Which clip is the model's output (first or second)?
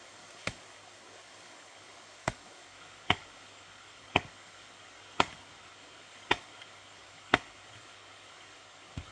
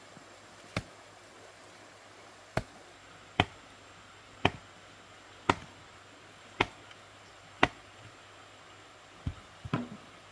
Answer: first